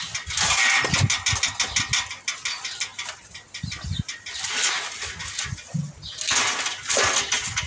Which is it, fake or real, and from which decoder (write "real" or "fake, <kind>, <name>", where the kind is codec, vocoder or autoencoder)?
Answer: real